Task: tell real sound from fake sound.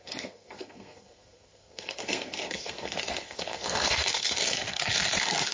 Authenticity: fake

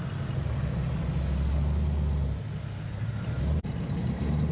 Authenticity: real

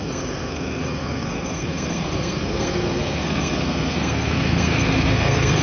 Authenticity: fake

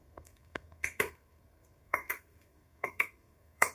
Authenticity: fake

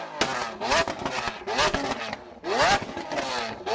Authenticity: real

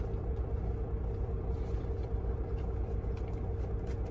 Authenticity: real